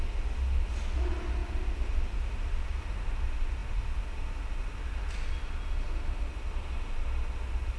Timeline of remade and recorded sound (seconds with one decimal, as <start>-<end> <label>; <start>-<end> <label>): 0.0-7.8 recorded